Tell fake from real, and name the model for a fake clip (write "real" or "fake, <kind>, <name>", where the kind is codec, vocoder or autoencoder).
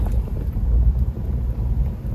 real